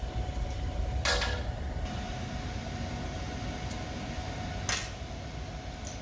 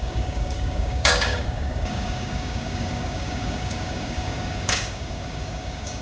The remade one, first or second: second